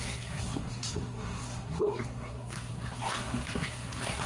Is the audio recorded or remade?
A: remade